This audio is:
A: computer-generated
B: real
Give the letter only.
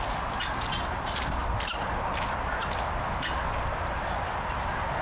B